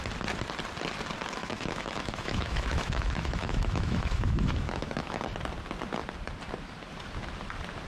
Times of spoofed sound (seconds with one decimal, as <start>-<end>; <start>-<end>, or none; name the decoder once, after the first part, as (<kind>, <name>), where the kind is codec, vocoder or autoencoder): 1.4-5.2 (autoencoder, DAC-VAE)